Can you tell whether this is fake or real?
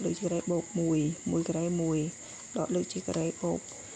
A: real